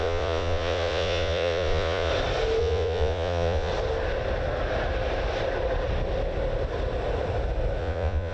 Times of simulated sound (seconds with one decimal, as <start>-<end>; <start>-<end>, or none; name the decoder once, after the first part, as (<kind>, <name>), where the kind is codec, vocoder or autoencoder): 0.0-2.1 (vocoder, Vocos); 2.6-3.7; 7.8-8.3